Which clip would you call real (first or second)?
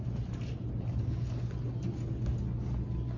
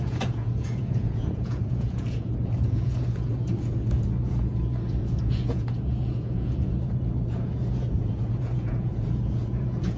first